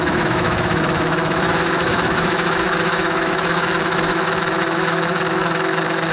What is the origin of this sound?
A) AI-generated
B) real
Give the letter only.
A